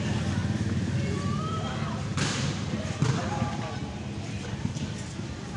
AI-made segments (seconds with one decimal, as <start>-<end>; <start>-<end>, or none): 0.4-1.6; 2.1-3.4

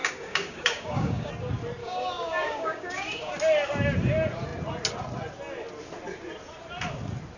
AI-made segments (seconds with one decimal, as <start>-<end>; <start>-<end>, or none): 0.0-1.3; 1.8-3.3